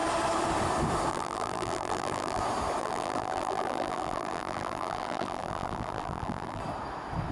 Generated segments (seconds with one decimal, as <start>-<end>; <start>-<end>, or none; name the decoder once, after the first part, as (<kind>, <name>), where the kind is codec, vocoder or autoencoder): 1.1-2.4 (vocoder, BigVGAN v2); 2.8-6.6